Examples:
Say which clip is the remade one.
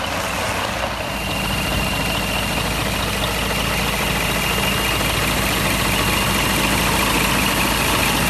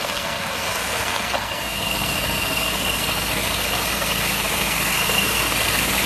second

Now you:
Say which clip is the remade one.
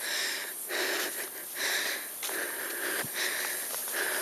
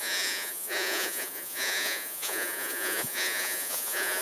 second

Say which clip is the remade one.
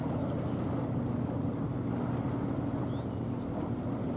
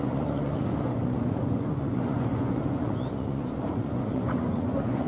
second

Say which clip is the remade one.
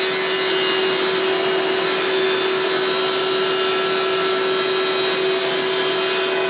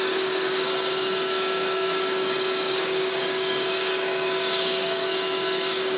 second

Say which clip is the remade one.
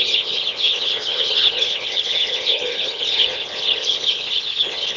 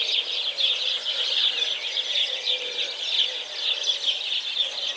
first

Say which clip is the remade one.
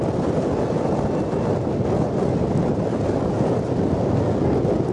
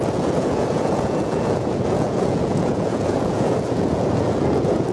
second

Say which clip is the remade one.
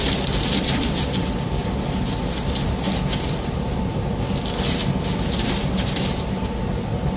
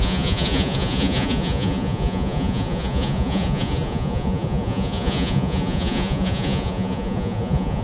second